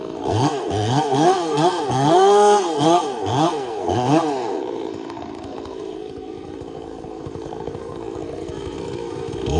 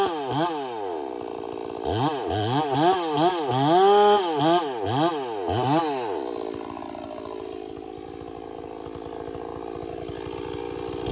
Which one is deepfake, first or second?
first